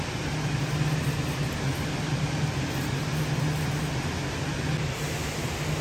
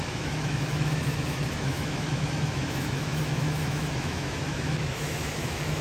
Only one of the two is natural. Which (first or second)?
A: first